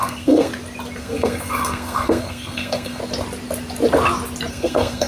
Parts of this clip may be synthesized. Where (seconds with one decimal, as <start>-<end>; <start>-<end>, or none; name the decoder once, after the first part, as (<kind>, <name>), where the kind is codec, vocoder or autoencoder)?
0.0-0.5 (codec, SNAC); 1.0-3.0; 4.5-5.1